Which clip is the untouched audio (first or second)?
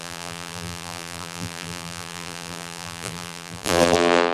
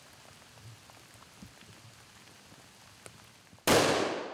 second